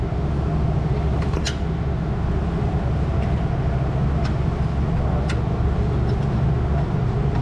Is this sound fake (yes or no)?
no